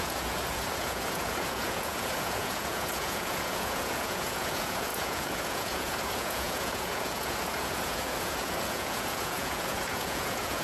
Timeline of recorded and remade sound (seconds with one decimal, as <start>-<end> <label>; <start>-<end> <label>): 0.0-10.6 remade